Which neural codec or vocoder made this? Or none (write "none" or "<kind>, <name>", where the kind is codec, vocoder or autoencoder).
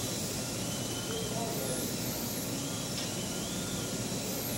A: none